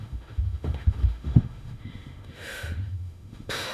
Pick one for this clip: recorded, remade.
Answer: remade